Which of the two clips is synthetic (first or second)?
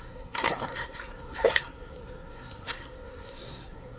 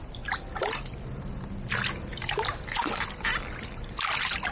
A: first